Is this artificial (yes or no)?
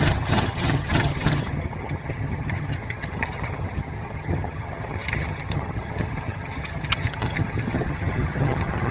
yes